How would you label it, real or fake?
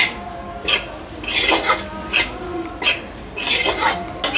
real